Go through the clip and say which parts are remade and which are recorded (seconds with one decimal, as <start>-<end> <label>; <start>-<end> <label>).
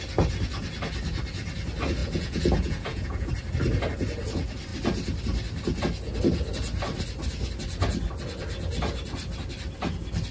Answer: 0.0-2.0 recorded; 2.0-3.3 remade; 3.3-10.3 recorded